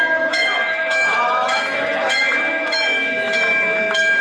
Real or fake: fake